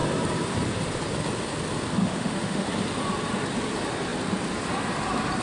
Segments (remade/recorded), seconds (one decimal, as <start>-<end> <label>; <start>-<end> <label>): 0.0-2.0 recorded; 2.0-2.7 remade; 2.7-5.4 recorded